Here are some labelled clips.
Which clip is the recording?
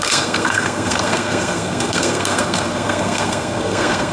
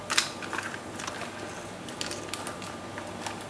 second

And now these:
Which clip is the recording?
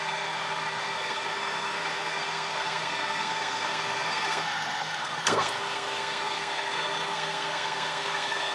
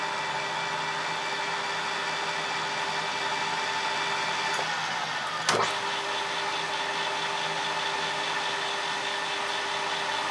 second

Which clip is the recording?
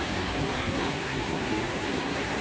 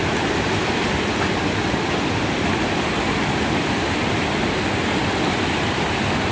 second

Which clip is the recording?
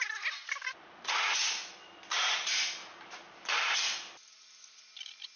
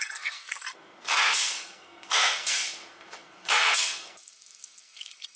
first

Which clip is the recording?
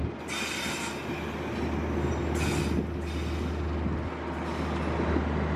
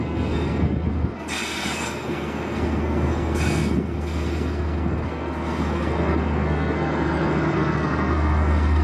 first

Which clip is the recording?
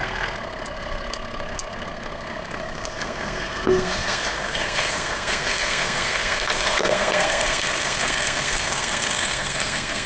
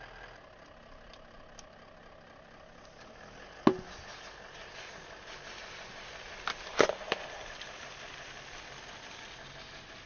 second